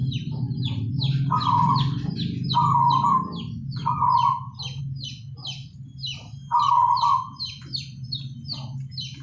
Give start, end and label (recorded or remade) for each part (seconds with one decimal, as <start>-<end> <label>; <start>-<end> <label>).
0.0-9.2 recorded